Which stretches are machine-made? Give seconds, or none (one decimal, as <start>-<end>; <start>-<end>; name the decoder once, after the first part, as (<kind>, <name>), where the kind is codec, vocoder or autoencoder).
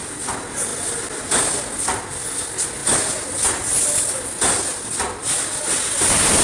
none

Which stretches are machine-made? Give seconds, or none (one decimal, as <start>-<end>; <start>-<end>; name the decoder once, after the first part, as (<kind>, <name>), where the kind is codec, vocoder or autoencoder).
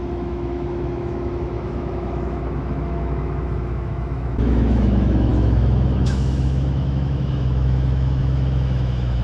0.0-9.2 (autoencoder, DAC-VAE)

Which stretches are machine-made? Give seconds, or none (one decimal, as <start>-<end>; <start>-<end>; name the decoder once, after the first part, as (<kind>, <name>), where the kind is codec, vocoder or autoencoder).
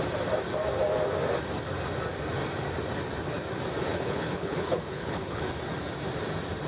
3.9-5.5 (codec, HILCodec)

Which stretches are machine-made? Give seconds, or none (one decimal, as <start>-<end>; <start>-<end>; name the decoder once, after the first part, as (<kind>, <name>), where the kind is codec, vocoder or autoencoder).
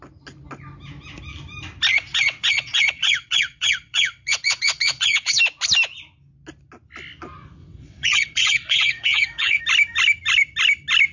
1.9-5.4 (vocoder, WaveNeXt); 7.6-9.6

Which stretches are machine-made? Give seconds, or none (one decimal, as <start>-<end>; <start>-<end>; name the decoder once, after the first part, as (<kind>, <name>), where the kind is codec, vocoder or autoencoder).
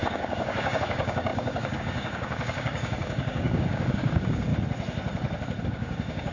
0.0-4.5 (codec, DAC); 5.6-6.3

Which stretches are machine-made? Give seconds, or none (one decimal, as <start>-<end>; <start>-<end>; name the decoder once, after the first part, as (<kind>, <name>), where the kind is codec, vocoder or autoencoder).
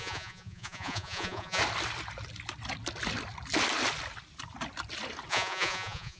0.0-1.6 (vocoder, Vocos); 5.3-6.2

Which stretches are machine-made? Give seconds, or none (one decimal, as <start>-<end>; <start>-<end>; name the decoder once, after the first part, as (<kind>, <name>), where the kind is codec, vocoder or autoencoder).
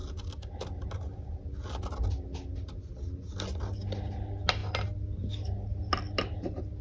none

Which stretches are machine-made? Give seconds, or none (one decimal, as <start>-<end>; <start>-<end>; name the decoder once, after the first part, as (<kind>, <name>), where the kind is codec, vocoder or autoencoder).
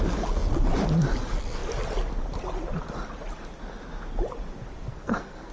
4.9-5.5 (codec, SNAC)